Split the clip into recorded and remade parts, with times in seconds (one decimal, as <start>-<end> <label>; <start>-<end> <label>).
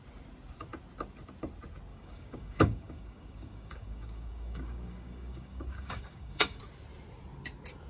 0.0-1.9 recorded; 1.9-6.6 remade; 6.6-7.9 recorded